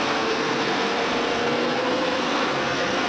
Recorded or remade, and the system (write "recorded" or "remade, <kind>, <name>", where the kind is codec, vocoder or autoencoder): remade, codec, SNAC